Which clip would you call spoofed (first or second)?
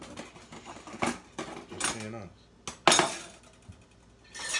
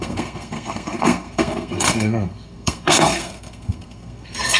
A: second